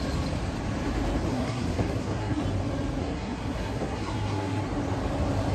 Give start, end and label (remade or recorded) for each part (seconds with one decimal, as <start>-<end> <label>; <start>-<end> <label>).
0.0-1.3 recorded; 1.3-2.4 remade; 2.4-3.0 recorded; 3.0-4.6 remade; 4.6-5.5 recorded